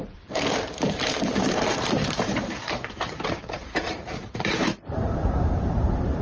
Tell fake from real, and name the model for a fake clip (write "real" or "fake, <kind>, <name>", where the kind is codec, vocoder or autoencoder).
fake, vocoder, BigVGAN v2